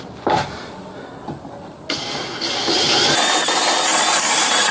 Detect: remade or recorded recorded